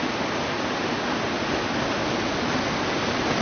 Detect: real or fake real